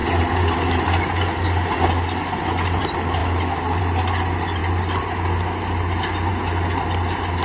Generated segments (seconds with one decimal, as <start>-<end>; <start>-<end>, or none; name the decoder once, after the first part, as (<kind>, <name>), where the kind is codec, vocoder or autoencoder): none